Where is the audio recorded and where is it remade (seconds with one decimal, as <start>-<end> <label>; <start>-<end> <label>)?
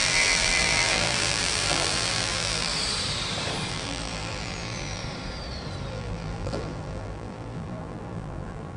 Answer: 0.0-2.7 remade; 2.7-3.7 recorded; 3.7-5.0 remade; 5.0-5.9 recorded; 5.9-8.8 remade